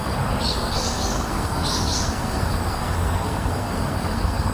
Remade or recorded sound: remade